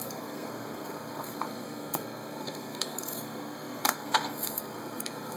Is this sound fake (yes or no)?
yes